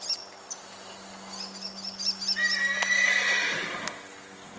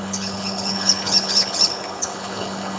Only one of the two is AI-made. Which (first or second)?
second